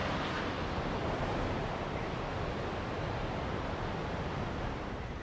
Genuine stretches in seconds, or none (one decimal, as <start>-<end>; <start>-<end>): 0.0-5.2